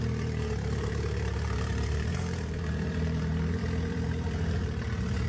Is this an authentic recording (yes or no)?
no